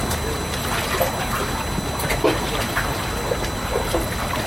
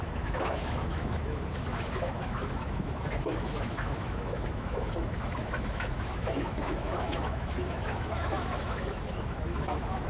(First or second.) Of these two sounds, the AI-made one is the second